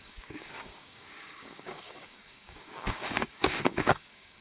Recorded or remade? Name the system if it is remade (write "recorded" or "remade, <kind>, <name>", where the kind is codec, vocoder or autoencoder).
remade, codec, DAC